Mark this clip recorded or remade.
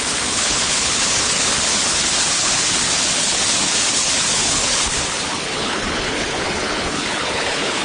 remade